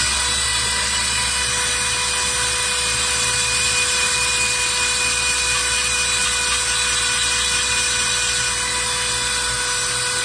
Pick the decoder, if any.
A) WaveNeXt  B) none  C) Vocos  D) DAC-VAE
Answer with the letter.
B